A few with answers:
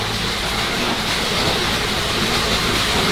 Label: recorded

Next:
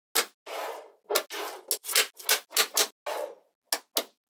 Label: recorded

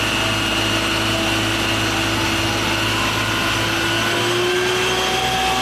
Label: recorded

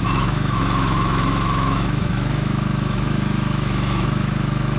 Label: remade